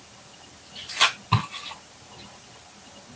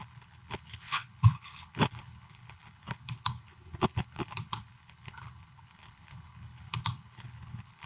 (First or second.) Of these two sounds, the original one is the first